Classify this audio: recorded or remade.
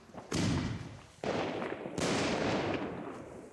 recorded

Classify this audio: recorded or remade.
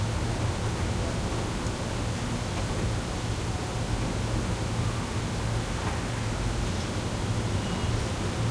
recorded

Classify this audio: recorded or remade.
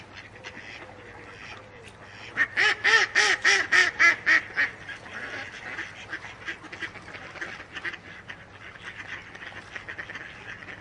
recorded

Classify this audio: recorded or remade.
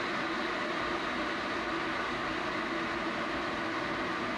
recorded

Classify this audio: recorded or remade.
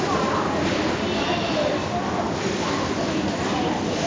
recorded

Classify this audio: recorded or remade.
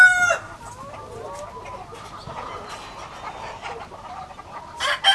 recorded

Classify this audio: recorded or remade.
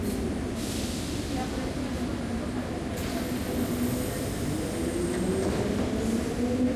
recorded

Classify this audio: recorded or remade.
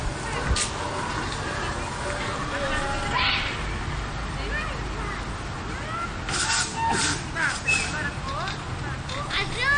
recorded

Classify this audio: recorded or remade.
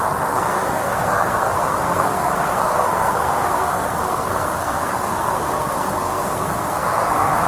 remade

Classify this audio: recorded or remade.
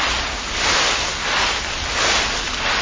recorded